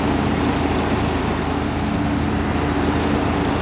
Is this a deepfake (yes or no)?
no